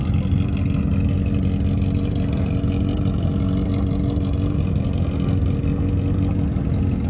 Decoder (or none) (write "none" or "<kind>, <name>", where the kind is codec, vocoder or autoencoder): none